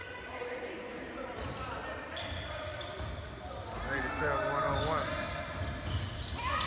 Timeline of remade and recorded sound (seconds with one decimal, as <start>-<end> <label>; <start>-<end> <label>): 0.0-1.5 remade; 1.5-6.7 recorded